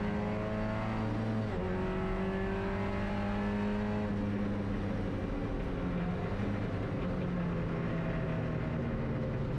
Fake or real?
real